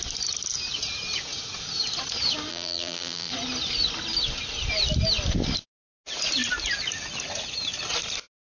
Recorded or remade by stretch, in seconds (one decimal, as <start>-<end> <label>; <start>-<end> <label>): 0.0-2.5 recorded; 2.5-3.3 remade; 3.3-8.5 recorded